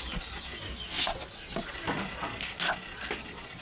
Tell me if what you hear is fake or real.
real